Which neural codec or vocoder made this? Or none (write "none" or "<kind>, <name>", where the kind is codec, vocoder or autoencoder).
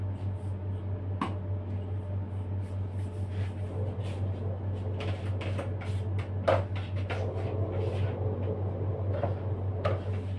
none